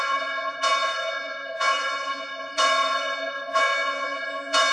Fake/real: fake